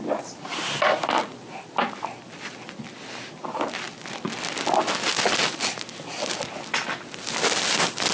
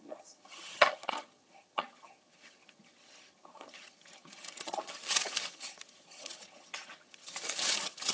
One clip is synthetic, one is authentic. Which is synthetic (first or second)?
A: second